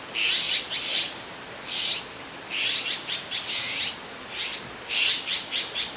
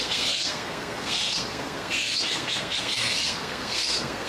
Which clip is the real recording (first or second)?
first